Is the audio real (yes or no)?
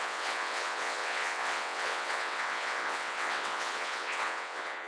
no